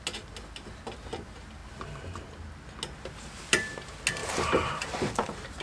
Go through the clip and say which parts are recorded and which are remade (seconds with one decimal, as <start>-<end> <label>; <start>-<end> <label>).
0.0-4.2 recorded; 4.2-5.6 remade